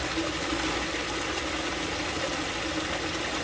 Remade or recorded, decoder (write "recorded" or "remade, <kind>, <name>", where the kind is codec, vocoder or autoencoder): recorded